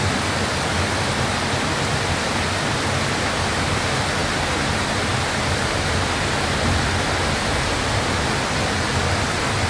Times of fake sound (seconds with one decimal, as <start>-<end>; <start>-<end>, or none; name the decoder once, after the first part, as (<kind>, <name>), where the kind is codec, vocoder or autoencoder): none